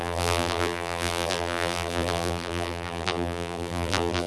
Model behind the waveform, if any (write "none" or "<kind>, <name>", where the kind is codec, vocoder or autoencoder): vocoder, BigVGAN v2